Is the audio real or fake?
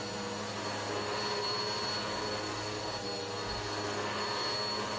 real